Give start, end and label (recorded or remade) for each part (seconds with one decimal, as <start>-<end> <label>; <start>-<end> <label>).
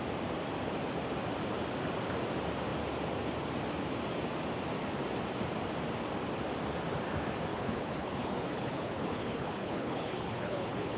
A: 0.0-7.5 recorded; 7.5-11.0 remade